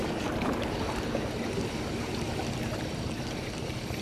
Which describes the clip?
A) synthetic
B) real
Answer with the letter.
B